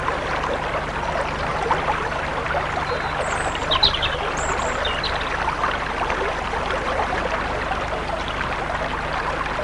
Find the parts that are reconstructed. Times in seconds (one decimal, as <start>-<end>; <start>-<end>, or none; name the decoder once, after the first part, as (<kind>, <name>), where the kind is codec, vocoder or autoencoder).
1.5-2.3 (vocoder, BigVGAN v2); 3.6-7.2

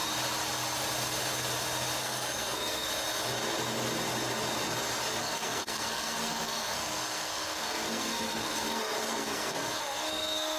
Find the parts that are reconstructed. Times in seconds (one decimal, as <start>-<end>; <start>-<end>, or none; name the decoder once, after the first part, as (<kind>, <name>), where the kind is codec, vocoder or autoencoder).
2.0-2.9 (codec, SNAC); 5.2-10.6

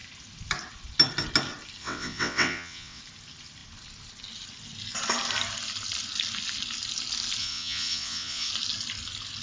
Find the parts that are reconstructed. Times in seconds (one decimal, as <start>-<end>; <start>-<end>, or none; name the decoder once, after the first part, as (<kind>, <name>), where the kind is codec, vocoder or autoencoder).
1.8-3.0 (vocoder, WaveNeXt); 7.4-8.5

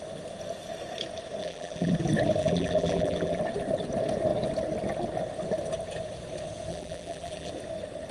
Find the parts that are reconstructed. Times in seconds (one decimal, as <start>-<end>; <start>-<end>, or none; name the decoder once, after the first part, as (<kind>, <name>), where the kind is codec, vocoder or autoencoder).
1.4-1.9 (vocoder, BigVGAN v2); 2.4-3.4; 6.7-7.5

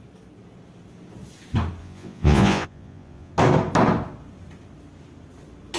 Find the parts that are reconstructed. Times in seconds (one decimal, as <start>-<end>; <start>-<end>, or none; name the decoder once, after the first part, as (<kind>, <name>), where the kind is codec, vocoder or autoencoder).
1.8-3.3 (vocoder, Vocos)

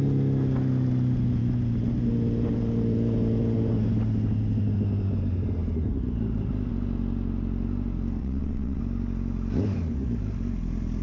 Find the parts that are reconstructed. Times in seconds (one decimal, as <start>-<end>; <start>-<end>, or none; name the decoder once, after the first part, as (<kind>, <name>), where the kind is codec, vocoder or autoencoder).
8.2-8.8 (vocoder, WaveNeXt)

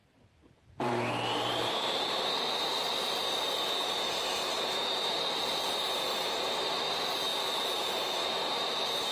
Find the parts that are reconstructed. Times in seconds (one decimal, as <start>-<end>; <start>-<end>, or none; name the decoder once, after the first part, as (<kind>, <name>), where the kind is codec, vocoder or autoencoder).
0.0-9.1 (vocoder, BigVGAN v2)